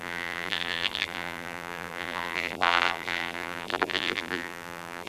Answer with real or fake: fake